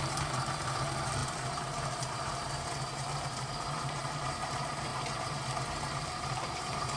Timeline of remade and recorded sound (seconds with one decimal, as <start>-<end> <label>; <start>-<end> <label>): 0.0-7.0 remade